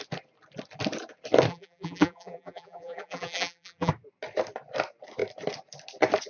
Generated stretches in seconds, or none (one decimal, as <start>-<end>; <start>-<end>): 1.5-3.9